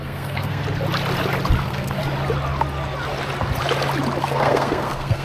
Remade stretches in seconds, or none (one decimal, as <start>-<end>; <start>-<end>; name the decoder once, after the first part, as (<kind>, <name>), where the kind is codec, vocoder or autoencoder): 0.0-0.6 (codec, SNAC); 1.6-2.0; 4.2-5.2